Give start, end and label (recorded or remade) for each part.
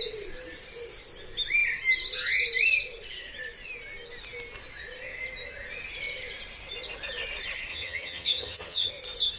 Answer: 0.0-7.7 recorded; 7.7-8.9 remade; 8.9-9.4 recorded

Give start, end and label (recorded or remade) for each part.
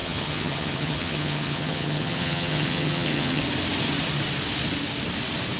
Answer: 0.0-3.4 remade; 3.4-5.6 recorded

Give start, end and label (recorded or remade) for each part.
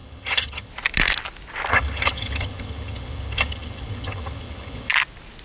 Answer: 0.0-0.7 remade; 0.7-1.7 recorded; 1.7-4.9 remade; 4.9-5.4 recorded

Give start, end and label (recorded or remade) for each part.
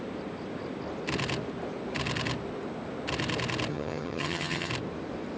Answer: 0.0-3.7 recorded; 3.7-4.7 remade; 4.7-5.4 recorded